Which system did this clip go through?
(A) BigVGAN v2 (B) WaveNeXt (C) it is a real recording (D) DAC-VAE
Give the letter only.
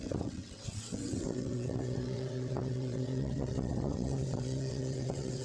B